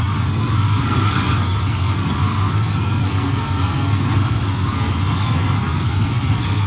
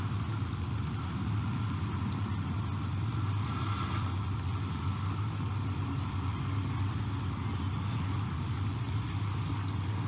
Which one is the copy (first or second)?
first